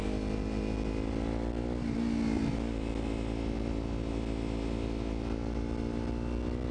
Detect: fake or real real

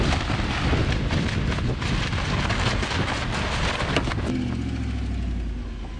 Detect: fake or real real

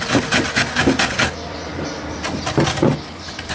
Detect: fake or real real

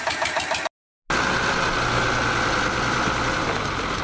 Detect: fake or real real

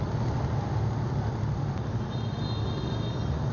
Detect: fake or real real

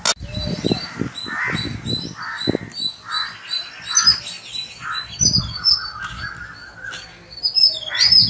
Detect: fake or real real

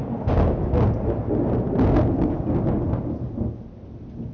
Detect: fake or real real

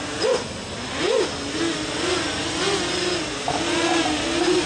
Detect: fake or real real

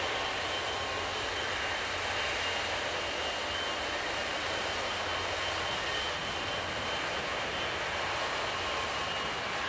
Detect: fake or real real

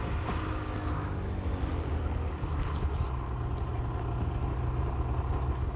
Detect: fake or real real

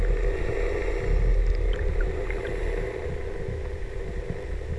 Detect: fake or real real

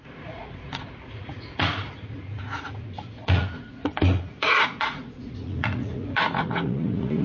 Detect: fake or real fake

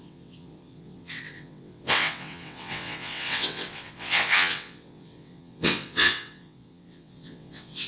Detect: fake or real fake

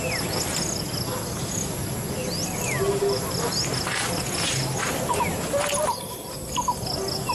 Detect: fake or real real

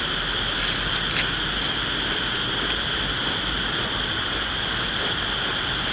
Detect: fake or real real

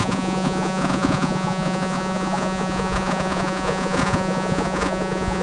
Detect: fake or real fake